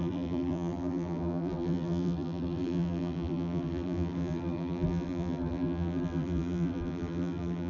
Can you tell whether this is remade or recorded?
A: remade